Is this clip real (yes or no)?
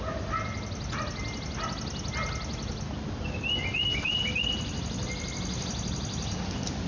yes